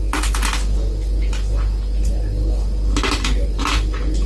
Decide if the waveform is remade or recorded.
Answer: recorded